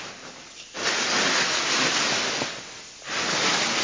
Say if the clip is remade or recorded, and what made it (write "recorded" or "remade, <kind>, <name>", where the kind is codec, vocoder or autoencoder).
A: recorded